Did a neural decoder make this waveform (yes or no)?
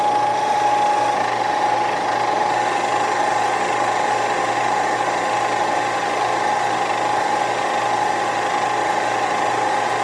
no